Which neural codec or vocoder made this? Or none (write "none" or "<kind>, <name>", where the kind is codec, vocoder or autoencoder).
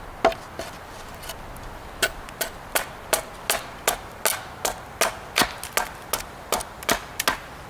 none